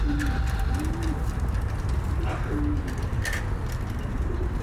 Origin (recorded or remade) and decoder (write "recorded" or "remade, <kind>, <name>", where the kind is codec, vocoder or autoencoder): recorded